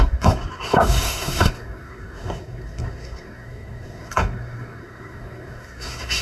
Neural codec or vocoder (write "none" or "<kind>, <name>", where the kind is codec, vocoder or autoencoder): codec, SNAC